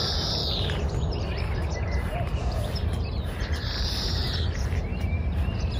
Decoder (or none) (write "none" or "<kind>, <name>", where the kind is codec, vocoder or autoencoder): vocoder, BigVGAN v2